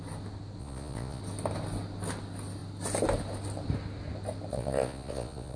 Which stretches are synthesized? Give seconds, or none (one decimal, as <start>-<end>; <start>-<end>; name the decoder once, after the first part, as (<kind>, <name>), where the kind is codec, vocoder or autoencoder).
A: 0.6-1.2 (vocoder, Vocos); 4.5-5.6